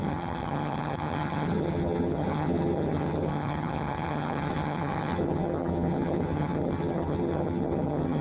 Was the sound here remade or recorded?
remade